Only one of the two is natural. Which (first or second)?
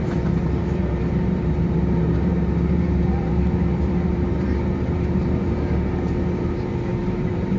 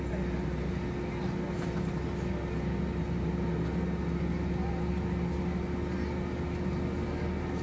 second